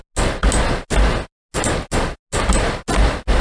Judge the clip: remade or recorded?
recorded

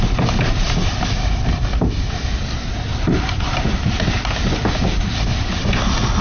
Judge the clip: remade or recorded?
remade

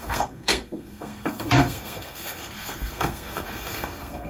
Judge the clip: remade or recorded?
remade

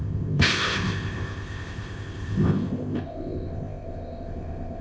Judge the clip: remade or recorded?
remade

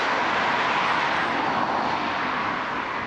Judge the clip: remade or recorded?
recorded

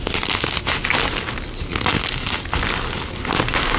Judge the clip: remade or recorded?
recorded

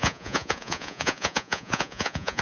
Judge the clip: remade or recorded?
remade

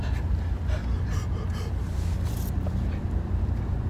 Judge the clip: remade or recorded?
recorded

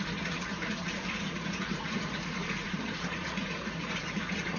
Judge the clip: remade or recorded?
remade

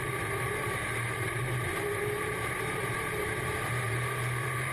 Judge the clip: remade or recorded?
remade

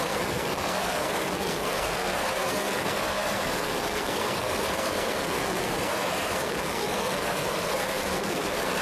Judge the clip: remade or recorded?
remade